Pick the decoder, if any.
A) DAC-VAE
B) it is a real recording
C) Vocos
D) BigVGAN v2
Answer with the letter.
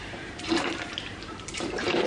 D